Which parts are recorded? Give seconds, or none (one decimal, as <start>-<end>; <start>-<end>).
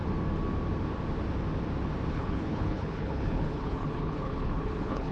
0.0-2.1